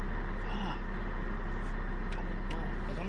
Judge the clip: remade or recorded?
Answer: recorded